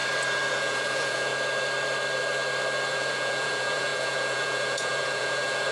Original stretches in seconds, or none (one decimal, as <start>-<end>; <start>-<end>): 0.0-0.5; 1.3-2.9